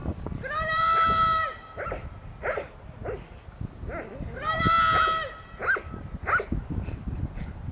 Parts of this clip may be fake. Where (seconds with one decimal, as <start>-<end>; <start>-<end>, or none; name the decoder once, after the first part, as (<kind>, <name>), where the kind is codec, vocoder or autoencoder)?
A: none